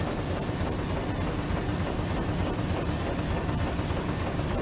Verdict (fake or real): real